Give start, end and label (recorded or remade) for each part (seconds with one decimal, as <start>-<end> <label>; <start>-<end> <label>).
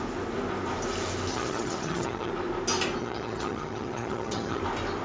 0.0-1.3 recorded; 1.3-2.3 remade; 2.3-3.0 recorded; 3.0-4.6 remade; 4.6-5.0 recorded